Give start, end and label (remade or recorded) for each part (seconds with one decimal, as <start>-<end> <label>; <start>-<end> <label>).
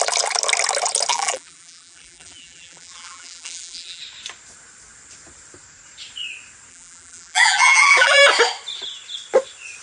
0.0-1.1 recorded; 1.1-4.0 remade; 4.0-6.7 recorded; 6.7-8.2 remade; 8.2-9.8 recorded